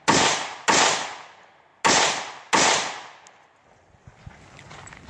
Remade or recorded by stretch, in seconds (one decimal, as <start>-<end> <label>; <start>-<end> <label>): 0.0-5.1 recorded